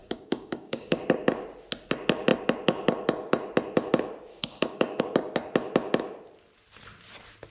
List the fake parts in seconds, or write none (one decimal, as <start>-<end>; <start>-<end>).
0.0-1.0; 4.3-5.0